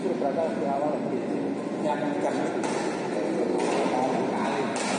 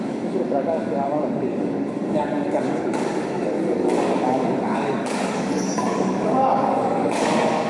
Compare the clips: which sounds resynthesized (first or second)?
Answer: second